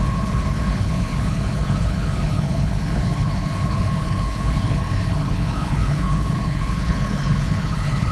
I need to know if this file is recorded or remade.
remade